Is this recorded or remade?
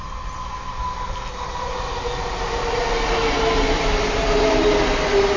recorded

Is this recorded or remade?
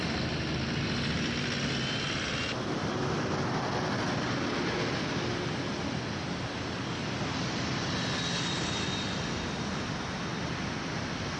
recorded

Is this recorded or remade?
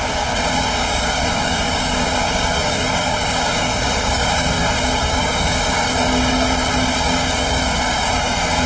remade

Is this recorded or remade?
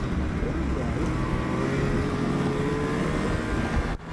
recorded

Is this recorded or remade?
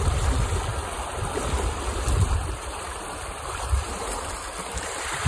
remade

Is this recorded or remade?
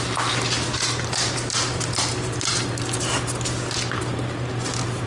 recorded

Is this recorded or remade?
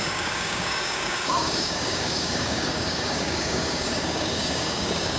remade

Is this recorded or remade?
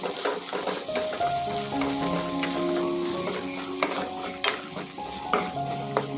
recorded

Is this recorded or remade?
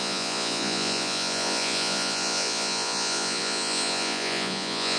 remade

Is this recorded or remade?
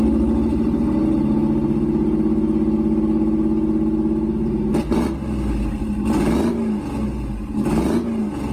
recorded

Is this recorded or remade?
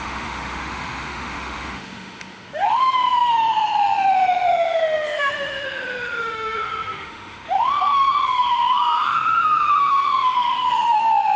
remade